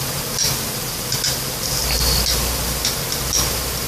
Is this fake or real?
real